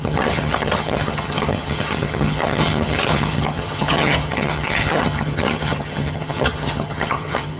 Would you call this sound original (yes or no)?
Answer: no